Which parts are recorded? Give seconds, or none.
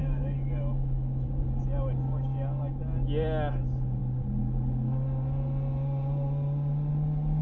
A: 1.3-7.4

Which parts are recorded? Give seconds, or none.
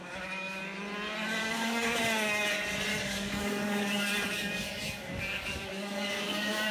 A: 0.6-1.4; 2.5-2.9